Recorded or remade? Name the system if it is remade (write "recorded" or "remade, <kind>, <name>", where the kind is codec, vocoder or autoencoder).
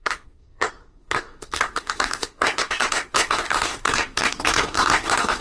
remade, codec, SNAC